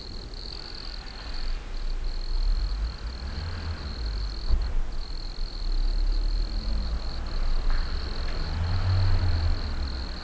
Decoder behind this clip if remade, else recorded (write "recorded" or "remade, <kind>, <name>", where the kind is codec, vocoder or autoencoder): recorded